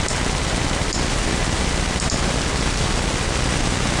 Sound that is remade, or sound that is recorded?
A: recorded